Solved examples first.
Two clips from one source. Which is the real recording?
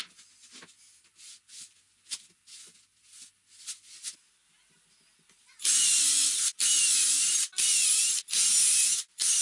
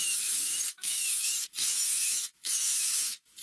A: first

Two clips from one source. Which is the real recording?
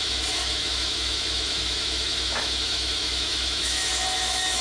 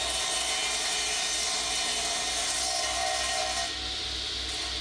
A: second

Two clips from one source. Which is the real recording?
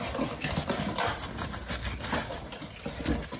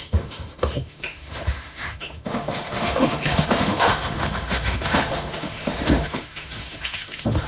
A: first